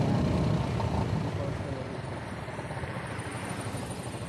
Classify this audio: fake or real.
real